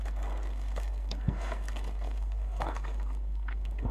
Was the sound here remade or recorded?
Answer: remade